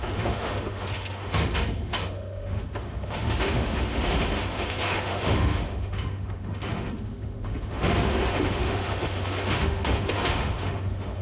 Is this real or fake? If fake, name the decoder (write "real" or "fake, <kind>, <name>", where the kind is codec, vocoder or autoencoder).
fake, autoencoder, DAC-VAE